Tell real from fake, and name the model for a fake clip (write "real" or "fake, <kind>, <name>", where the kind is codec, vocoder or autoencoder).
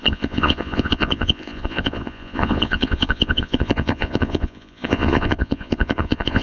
fake, vocoder, Vocos